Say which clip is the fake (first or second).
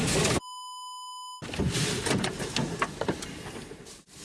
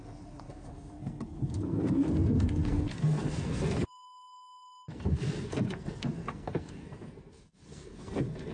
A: second